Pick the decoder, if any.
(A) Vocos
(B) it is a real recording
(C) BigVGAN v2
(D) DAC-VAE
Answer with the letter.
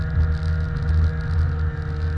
B